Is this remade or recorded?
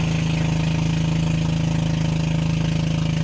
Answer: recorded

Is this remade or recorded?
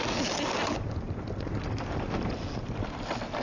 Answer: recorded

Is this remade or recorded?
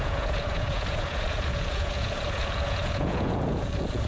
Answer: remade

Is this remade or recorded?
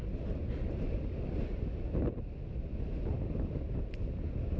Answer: recorded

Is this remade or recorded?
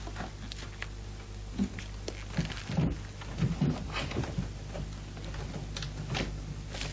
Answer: recorded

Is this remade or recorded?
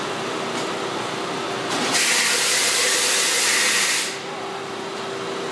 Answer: recorded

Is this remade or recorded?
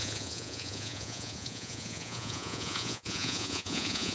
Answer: remade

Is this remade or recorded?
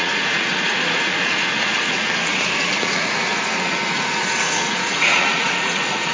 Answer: remade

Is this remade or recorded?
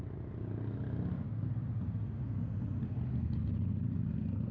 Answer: recorded